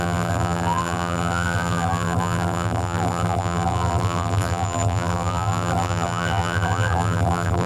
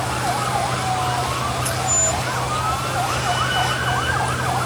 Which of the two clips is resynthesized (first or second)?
first